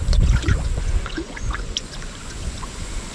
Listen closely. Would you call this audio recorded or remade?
remade